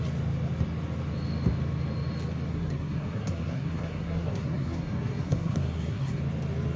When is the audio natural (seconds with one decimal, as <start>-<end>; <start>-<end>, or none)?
0.0-2.5; 6.2-6.8